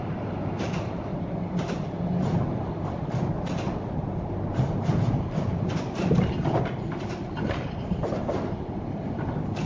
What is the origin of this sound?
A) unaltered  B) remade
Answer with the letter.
A